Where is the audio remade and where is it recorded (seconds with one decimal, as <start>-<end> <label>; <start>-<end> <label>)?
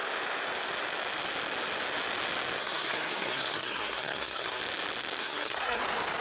0.0-2.6 recorded; 2.6-4.6 remade; 4.6-5.2 recorded; 5.2-5.8 remade; 5.8-6.2 recorded